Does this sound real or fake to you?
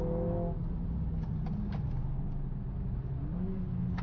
real